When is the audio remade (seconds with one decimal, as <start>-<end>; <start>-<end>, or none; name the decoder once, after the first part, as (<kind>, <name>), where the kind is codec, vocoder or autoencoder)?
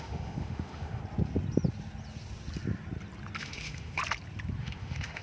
0.0-1.0 (autoencoder, DAC-VAE); 3.4-4.0; 4.6-5.2